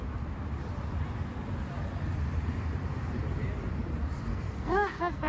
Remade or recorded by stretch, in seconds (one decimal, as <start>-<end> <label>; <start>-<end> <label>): 0.0-4.3 recorded; 4.3-5.3 remade